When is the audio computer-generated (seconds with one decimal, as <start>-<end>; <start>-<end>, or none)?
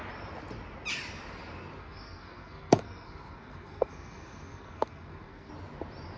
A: 1.8-5.5